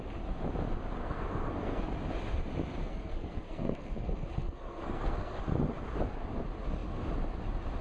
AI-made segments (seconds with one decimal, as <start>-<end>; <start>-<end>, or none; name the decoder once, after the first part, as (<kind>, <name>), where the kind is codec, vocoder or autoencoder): 1.0-1.8 (codec, SNAC); 2.8-5.4